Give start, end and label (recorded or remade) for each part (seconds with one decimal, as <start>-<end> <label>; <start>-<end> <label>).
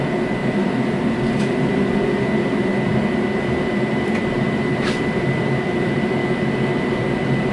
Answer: 0.0-0.4 remade; 0.4-1.0 recorded; 1.0-2.7 remade; 2.7-3.2 recorded; 3.2-6.2 remade; 6.2-7.0 recorded; 7.0-7.5 remade